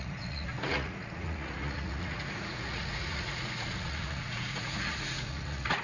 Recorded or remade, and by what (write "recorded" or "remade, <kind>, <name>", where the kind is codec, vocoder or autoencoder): remade, vocoder, Vocos